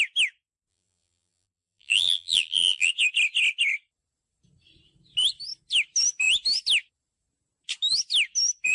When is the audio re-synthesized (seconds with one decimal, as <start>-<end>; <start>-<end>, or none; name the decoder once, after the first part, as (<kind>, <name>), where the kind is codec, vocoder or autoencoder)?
0.7-2.9 (vocoder, BigVGAN v2)